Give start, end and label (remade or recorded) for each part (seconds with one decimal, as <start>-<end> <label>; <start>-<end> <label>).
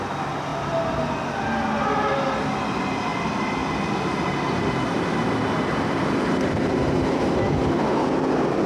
0.0-8.7 recorded